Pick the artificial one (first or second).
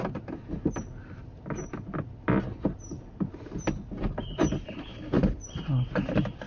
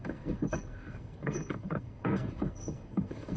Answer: second